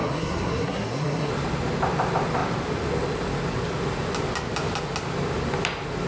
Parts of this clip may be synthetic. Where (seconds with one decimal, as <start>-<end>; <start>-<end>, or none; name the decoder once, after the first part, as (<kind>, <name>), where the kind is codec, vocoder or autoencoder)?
0.0-1.3 (codec, SNAC)

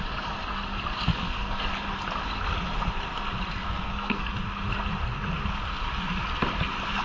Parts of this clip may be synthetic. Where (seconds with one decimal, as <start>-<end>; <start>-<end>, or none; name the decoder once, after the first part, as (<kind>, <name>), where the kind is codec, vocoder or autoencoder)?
1.1-1.6 (codec, SNAC); 3.6-4.3

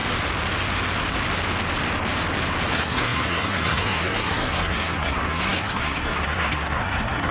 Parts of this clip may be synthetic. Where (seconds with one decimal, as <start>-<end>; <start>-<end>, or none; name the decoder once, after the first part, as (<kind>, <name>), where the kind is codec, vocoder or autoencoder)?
2.7-7.3 (codec, SNAC)

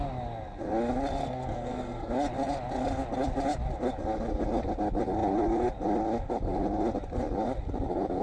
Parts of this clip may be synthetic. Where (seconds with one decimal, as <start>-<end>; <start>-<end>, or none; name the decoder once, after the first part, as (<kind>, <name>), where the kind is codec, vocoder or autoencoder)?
1.2-2.1 (codec, SNAC)

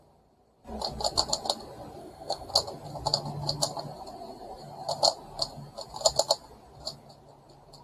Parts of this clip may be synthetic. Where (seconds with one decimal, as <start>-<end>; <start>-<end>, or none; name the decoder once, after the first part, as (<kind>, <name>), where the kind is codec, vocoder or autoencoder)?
2.0-2.5 (codec, SNAC)

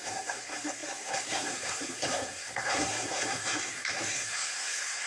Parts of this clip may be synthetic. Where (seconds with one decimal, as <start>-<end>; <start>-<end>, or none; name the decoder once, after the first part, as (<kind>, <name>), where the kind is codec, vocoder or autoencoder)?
0.0-5.1 (codec, SNAC)

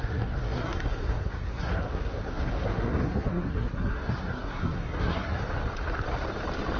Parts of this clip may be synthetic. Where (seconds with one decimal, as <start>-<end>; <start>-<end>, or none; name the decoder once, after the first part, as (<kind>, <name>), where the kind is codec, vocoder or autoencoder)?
0.0-5.4 (codec, SNAC)

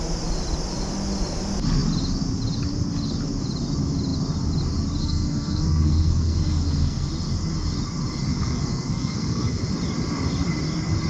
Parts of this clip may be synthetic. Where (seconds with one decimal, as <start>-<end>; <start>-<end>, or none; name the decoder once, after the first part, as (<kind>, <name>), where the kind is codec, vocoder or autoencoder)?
5.0-7.1 (codec, SNAC); 8.3-9.6